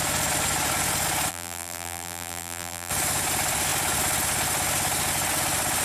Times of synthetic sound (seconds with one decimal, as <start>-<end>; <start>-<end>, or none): 1.3-2.9